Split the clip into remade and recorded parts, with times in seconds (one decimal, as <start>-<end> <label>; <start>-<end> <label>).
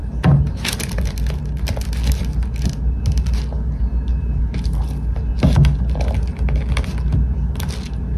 0.0-4.1 recorded; 4.1-5.3 remade; 5.3-8.2 recorded